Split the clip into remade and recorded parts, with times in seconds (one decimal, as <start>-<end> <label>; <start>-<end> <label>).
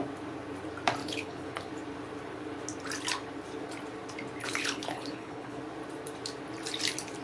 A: 0.0-1.0 recorded; 1.0-1.7 remade; 1.7-4.4 recorded; 4.4-5.6 remade; 5.6-7.2 recorded